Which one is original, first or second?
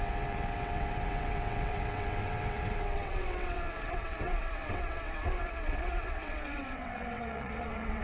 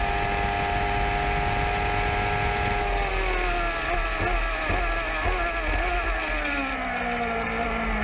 second